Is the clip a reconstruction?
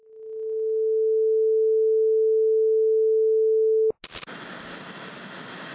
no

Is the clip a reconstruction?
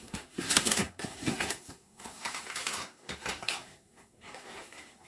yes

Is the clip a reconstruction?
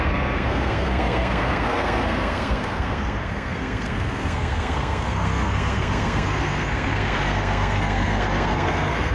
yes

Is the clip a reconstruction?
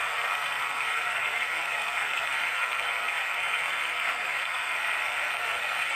yes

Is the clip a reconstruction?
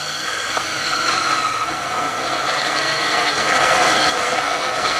yes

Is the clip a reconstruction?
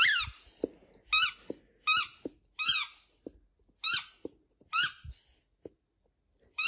no